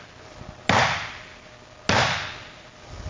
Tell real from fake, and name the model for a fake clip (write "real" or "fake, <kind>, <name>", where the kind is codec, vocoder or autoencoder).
real